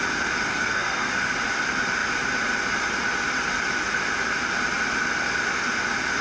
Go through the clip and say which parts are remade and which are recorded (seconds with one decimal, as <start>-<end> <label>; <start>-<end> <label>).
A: 0.0-0.5 recorded; 0.5-1.1 remade; 1.1-6.2 recorded